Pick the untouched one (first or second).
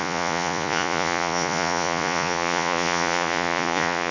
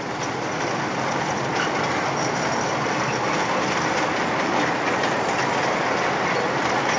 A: second